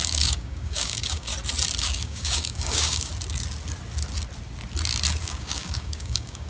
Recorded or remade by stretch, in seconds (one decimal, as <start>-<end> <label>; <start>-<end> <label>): 0.0-1.3 remade; 1.3-1.8 recorded; 1.8-3.1 remade; 3.1-5.2 recorded; 5.2-6.5 remade